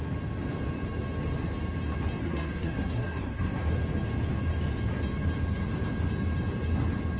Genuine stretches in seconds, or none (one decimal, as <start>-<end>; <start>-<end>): 0.0-2.2; 3.6-7.2